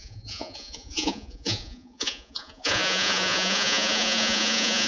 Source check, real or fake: fake